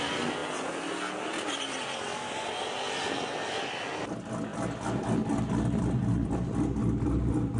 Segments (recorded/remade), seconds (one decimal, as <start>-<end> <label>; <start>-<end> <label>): 0.0-7.6 recorded